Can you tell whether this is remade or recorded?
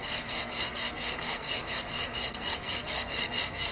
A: remade